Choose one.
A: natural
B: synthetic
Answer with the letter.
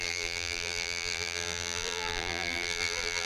B